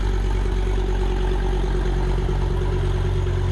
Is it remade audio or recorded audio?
recorded